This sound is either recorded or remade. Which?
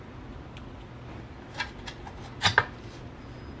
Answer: recorded